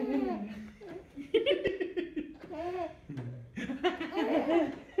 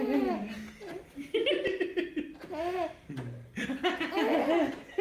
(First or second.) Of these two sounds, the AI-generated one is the first